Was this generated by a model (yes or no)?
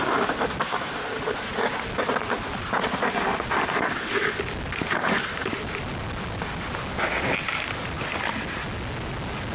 no